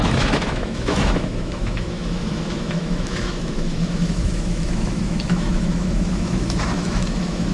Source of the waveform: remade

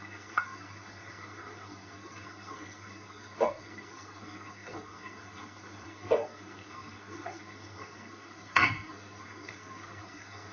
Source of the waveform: remade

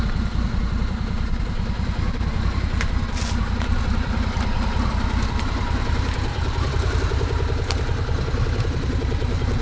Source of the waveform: remade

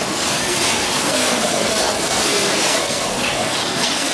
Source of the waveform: remade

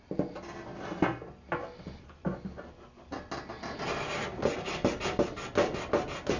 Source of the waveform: recorded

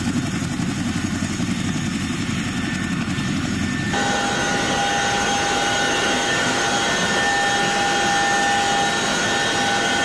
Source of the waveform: recorded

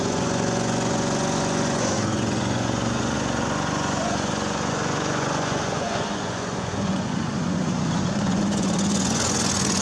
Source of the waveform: remade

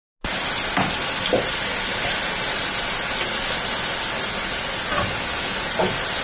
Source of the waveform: recorded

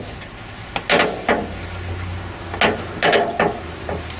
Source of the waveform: recorded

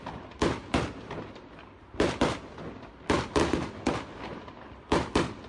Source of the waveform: recorded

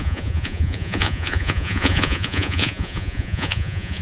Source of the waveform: remade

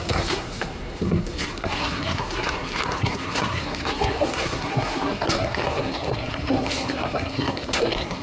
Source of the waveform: remade